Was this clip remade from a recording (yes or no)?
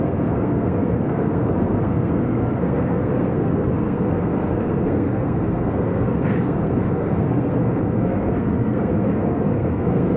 yes